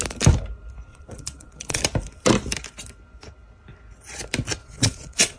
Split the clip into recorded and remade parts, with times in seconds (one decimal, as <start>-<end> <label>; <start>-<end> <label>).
0.0-0.9 recorded; 0.9-1.8 remade; 1.8-4.6 recorded; 4.6-5.4 remade